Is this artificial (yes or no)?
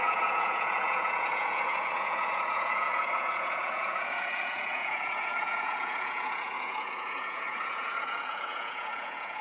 yes